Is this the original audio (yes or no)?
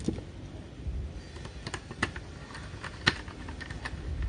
yes